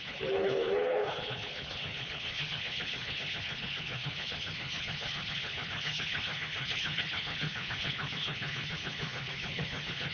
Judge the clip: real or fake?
fake